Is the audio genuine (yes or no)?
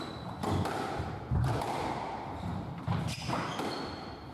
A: no